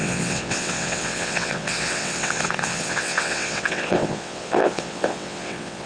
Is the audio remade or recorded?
remade